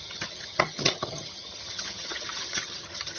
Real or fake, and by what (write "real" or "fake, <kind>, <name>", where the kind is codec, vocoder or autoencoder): fake, vocoder, HiFi-GAN